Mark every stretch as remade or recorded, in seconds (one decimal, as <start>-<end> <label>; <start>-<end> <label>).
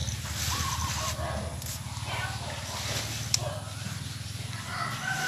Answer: 0.0-5.3 recorded